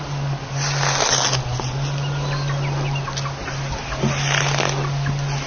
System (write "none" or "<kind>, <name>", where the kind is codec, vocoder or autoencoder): none